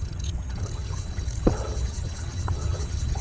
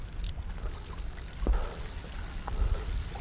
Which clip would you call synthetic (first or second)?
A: first